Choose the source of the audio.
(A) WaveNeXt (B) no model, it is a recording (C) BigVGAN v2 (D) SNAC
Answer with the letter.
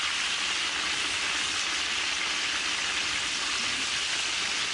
B